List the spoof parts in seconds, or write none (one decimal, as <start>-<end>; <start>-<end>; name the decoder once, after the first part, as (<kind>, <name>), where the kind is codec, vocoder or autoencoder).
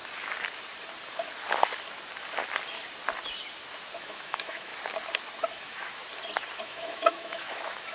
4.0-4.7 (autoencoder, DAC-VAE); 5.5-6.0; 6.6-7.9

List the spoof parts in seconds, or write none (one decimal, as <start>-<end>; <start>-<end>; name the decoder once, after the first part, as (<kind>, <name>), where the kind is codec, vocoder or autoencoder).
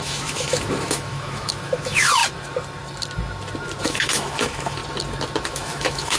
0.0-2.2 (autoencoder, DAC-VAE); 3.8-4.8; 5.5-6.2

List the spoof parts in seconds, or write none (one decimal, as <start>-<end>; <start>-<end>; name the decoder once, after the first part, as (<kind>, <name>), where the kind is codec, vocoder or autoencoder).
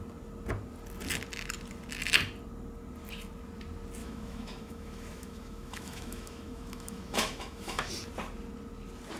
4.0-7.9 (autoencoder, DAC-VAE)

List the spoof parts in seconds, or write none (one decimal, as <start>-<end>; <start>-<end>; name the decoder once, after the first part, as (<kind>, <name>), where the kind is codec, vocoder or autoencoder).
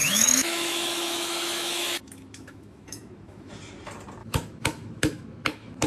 0.0-3.5 (autoencoder, DAC-VAE); 4.2-5.9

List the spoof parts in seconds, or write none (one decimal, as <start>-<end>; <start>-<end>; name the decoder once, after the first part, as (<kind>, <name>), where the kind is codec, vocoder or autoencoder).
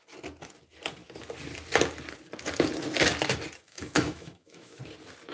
3.7-4.8 (autoencoder, DAC-VAE)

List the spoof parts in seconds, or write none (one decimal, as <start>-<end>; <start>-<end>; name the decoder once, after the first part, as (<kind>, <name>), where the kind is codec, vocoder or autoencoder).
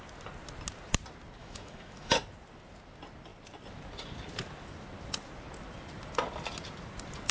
1.4-2.1 (autoencoder, DAC-VAE)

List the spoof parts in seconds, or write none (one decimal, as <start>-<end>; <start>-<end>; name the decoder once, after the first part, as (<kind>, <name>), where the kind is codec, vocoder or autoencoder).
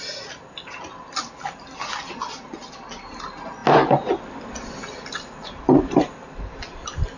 none